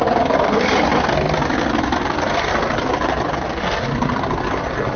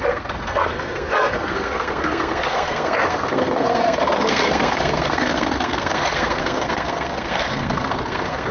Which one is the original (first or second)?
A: first